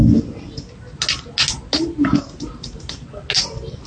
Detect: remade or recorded recorded